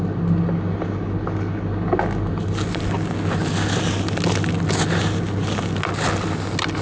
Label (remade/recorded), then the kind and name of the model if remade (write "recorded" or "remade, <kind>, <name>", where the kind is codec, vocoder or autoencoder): recorded